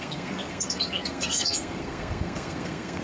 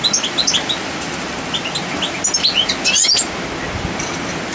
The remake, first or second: first